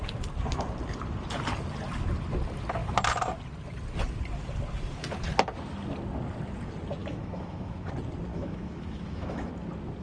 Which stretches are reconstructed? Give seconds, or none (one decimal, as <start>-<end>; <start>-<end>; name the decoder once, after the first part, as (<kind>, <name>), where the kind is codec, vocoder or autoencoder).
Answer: 7.0-7.9 (autoencoder, DAC-VAE); 8.3-9.5